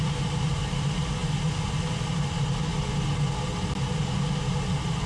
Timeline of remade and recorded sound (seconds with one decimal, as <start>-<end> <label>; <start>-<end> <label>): 0.0-5.1 recorded